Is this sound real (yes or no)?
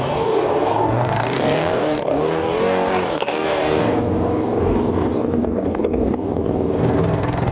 no